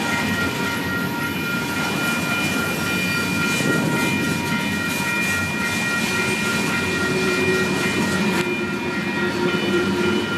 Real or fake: real